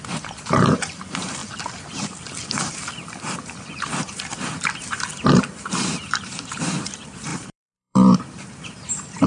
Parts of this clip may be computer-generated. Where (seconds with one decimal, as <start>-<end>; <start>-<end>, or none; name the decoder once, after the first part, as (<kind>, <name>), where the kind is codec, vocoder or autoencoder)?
0.0-1.4 (vocoder, BigVGAN v2); 5.3-9.3